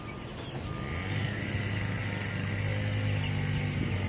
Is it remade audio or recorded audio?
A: recorded